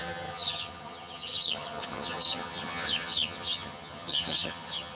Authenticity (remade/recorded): remade